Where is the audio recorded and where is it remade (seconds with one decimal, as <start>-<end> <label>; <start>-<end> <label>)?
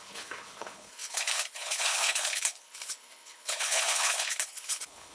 0.0-5.1 remade